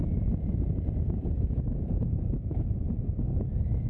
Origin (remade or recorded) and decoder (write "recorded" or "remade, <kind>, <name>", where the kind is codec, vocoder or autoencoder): remade, vocoder, Vocos